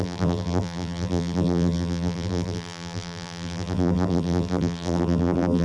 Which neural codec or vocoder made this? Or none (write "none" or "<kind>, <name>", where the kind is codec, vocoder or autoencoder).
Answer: vocoder, BigVGAN v2